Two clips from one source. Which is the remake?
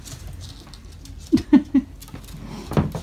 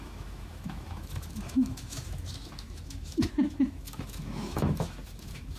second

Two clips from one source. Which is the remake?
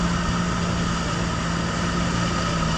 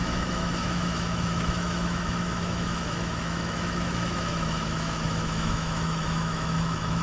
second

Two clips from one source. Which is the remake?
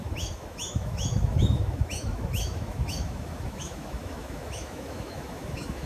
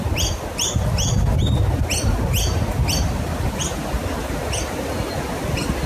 first